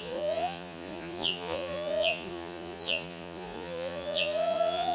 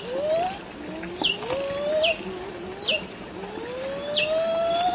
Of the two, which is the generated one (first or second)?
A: first